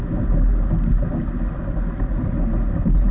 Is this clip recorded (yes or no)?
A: yes